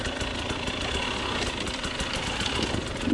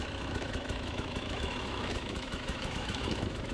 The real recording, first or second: first